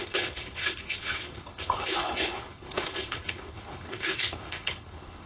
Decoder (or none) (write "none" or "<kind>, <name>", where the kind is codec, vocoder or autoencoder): codec, HILCodec